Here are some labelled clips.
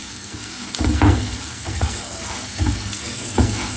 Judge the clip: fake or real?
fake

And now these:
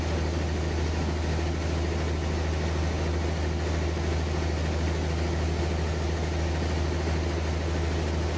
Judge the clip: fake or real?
real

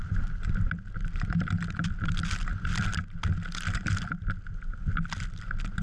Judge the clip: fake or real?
real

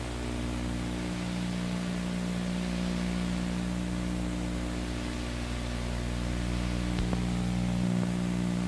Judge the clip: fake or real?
real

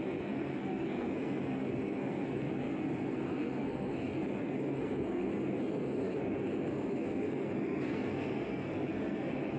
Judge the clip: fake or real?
fake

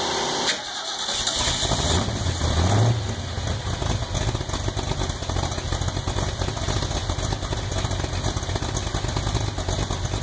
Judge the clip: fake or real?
real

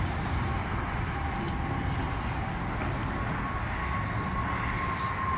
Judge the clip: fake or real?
real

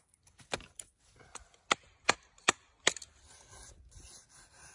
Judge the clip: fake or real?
real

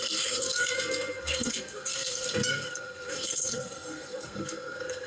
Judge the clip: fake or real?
fake